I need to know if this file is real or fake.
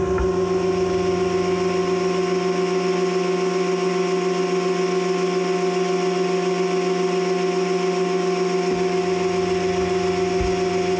real